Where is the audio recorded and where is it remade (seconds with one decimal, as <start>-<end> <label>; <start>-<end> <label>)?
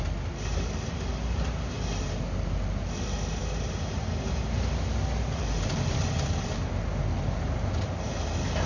0.0-8.7 recorded